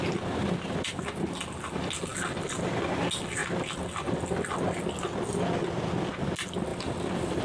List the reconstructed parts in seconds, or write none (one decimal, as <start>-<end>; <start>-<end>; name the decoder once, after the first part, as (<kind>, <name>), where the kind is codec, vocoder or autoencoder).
none